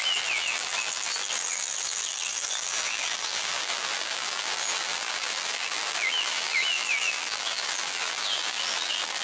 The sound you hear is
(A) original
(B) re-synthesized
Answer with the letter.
B